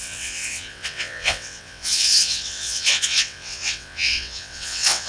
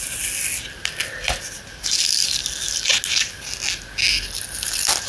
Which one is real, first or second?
second